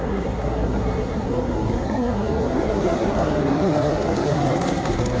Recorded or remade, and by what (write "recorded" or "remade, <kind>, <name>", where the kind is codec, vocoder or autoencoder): remade, codec, SNAC